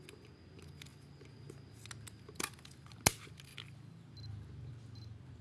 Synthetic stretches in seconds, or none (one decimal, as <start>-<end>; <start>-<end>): none